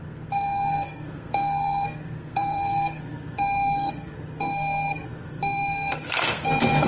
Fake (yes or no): yes